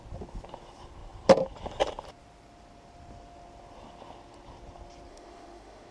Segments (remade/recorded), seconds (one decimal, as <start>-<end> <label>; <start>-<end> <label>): 0.0-5.1 recorded; 5.1-5.9 remade